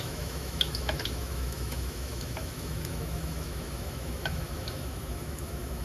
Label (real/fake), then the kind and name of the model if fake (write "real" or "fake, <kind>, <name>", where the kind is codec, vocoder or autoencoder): fake, autoencoder, DAC-VAE